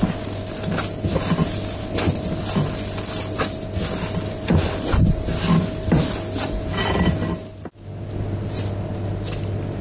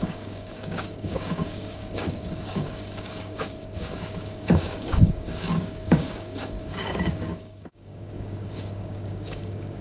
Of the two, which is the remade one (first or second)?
second